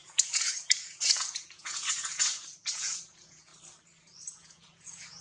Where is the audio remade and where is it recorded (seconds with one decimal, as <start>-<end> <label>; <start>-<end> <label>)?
0.0-3.5 remade; 3.5-4.3 recorded; 4.3-5.2 remade